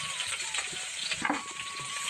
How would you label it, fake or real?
fake